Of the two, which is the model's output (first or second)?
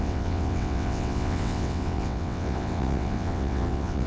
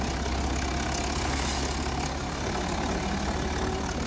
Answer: first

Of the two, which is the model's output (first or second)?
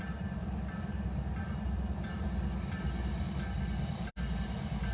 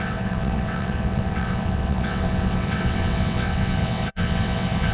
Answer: second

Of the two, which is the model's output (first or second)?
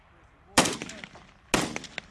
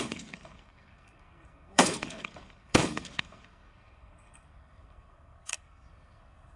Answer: second